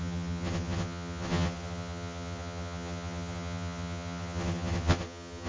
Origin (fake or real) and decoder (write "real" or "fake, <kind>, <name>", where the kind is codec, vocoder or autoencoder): fake, vocoder, HiFi-GAN